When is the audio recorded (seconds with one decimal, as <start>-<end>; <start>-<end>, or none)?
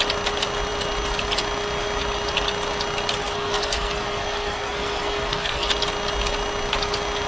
0.0-3.2; 5.7-7.3